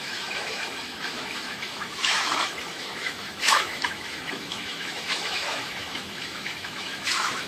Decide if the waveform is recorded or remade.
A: remade